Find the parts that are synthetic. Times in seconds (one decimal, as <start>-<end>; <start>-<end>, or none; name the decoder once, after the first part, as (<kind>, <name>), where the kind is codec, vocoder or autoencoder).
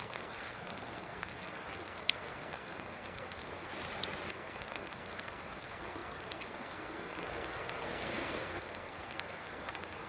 0.0-3.7 (codec, SNAC); 4.3-10.1